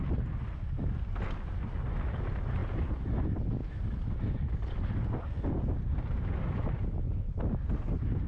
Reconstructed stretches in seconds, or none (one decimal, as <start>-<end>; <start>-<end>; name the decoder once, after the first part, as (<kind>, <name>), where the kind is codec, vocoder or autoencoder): none